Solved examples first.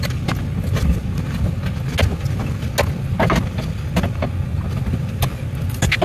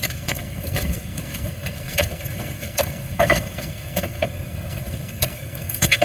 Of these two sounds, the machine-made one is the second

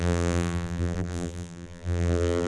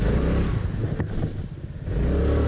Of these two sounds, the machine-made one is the first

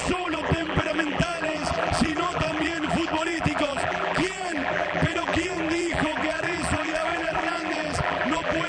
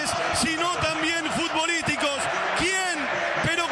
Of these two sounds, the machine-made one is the first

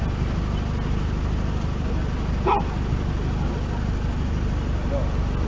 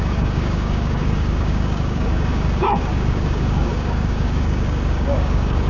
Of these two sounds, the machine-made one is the second